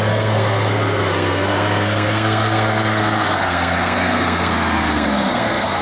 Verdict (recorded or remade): remade